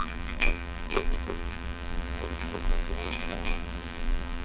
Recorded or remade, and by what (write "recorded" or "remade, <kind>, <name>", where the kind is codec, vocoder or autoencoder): remade, vocoder, BigVGAN v2